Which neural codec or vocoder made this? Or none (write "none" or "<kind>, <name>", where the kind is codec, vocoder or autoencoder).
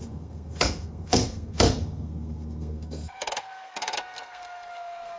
codec, SNAC